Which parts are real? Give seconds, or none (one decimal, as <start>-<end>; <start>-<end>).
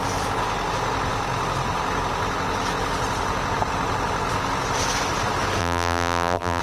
0.0-5.6